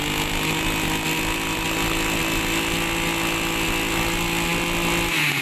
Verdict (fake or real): real